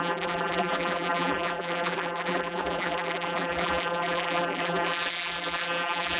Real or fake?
fake